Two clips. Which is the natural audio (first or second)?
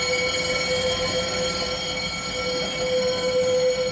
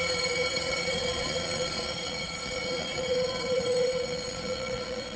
first